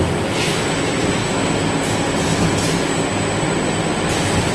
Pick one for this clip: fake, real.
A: real